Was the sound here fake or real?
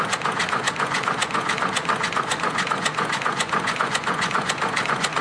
fake